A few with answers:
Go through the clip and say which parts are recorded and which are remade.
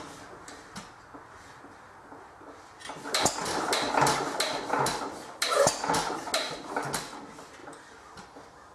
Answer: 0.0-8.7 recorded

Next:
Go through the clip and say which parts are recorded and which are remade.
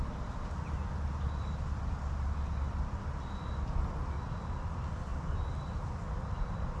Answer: 0.0-6.8 recorded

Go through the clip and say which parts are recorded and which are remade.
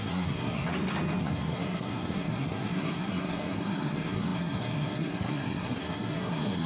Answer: 0.0-0.7 remade; 0.7-1.2 recorded; 1.2-6.7 remade